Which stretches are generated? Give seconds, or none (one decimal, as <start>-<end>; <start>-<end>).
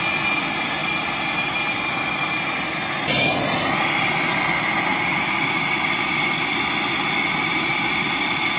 none